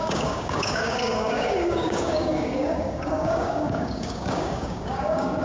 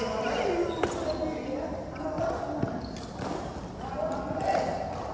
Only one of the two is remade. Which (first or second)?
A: first